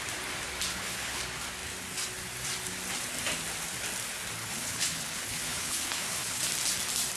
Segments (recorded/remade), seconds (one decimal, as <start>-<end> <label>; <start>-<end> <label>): 0.0-0.7 recorded; 0.7-1.2 remade; 1.2-4.4 recorded; 4.4-6.4 remade; 6.4-7.2 recorded